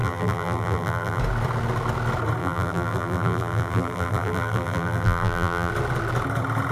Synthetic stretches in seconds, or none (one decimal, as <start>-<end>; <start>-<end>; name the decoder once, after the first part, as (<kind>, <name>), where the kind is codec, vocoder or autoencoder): 0.0-1.2 (vocoder, BigVGAN v2); 2.4-5.7